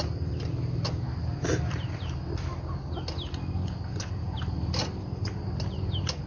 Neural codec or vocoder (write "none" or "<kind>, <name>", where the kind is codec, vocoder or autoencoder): none